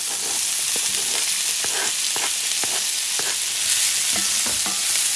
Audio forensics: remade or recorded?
recorded